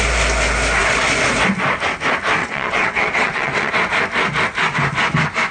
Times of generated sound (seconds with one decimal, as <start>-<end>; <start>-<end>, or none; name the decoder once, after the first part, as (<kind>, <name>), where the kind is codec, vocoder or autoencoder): 2.4-3.7 (vocoder, WaveNeXt)